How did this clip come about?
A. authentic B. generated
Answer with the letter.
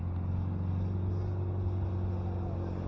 A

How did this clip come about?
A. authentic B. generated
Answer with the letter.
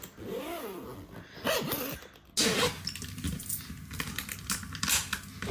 A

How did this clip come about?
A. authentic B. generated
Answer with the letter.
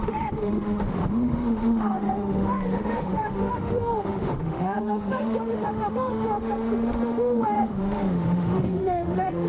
B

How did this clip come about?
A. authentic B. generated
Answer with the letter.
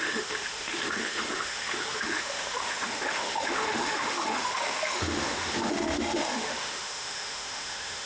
B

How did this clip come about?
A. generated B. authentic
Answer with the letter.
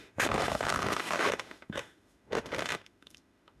A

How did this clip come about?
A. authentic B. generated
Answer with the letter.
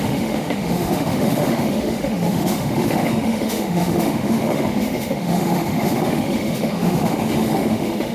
B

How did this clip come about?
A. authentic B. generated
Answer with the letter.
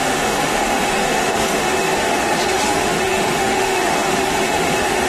B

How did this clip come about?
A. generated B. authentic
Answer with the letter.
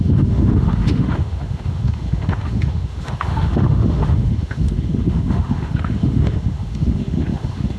A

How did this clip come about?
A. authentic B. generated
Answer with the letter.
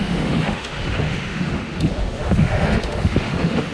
B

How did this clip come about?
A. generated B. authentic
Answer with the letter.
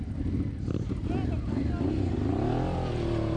B